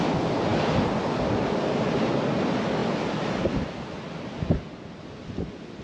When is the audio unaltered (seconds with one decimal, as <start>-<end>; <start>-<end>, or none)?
0.0-5.8